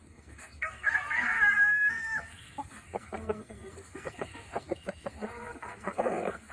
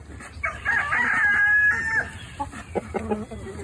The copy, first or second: first